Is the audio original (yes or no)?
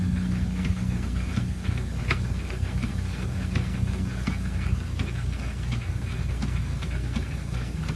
no